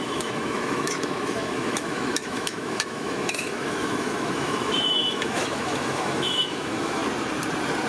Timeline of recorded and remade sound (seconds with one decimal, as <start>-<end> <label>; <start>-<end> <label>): 0.0-7.0 remade; 7.0-7.9 recorded